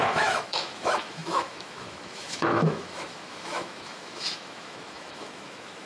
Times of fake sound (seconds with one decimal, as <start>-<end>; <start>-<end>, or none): 0.0-5.9